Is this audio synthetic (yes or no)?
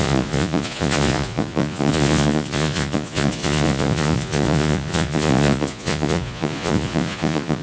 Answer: yes